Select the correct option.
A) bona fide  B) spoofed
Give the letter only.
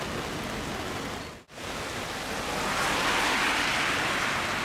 A